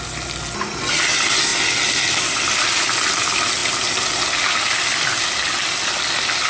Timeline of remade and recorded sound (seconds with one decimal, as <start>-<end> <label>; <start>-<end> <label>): 0.0-6.5 recorded